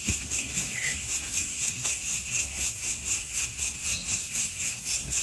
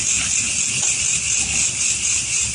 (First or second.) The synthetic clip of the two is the first